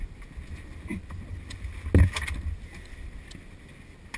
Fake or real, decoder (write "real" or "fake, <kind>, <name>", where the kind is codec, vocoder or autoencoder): real